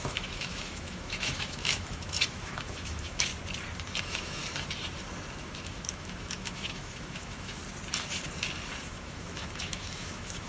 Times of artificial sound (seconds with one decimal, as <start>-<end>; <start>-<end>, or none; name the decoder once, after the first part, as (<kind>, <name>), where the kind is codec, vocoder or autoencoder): 0.0-3.3 (autoencoder, DAC-VAE); 4.0-4.4; 5.4-7.6; 8.8-10.5